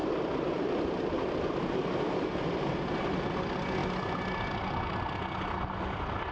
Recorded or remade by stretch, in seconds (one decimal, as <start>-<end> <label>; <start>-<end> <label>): 0.0-3.3 remade; 3.3-3.8 recorded; 3.8-4.5 remade; 4.5-6.3 recorded